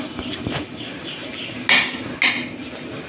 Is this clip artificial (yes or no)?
no